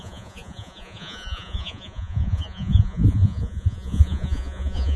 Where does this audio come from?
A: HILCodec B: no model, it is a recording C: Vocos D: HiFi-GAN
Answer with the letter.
C